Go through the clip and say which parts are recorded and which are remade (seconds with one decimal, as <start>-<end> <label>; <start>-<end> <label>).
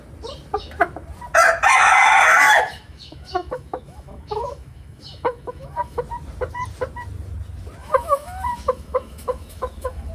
0.0-2.3 recorded; 2.3-6.0 remade; 6.0-7.8 recorded; 7.8-10.1 remade